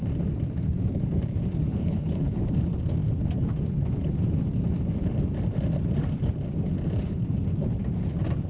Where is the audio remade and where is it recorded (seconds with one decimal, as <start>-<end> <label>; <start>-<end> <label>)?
0.0-1.8 recorded; 1.8-2.5 remade; 2.5-8.5 recorded